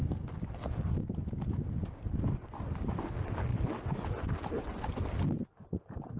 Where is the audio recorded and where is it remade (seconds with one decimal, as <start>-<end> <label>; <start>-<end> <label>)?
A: 0.0-6.2 recorded